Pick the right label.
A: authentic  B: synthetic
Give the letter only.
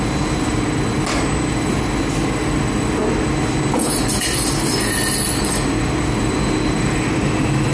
A